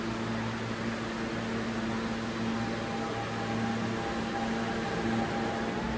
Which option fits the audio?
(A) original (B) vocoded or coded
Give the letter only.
A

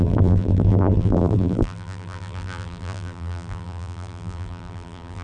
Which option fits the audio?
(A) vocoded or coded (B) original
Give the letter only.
A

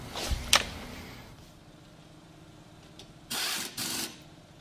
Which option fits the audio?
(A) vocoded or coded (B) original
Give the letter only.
A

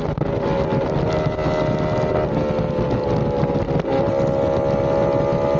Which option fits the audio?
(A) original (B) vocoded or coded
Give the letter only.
A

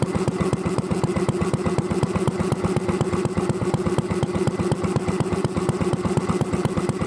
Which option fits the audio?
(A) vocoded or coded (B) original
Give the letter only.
B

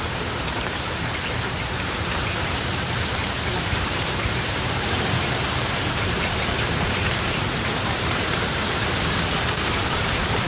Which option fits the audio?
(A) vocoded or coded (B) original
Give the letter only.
A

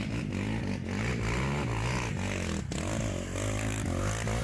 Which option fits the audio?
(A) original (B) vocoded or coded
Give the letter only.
A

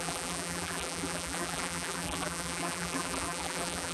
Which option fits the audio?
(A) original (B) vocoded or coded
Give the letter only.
B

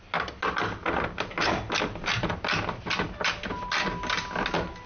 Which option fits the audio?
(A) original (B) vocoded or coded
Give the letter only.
A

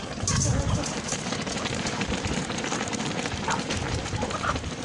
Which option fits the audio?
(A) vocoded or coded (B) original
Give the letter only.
A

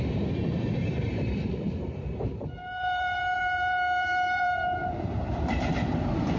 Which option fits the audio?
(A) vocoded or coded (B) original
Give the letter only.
A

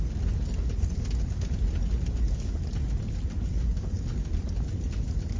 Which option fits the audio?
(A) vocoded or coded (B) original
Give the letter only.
B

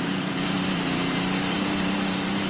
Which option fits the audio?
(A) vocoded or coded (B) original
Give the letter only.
A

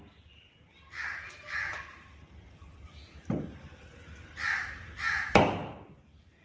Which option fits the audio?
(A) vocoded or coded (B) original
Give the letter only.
B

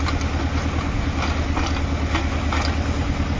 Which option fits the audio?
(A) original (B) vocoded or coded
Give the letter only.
A